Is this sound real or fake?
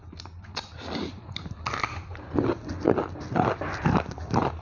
real